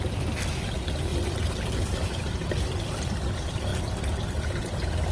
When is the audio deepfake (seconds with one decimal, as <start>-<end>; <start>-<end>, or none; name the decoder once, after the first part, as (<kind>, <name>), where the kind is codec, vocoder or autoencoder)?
1.1-2.3 (vocoder, BigVGAN v2)